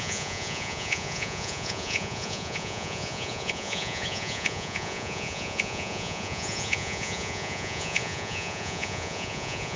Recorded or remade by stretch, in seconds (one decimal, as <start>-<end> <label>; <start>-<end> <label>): 0.0-9.8 remade